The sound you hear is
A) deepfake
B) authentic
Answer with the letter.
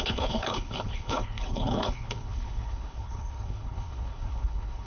A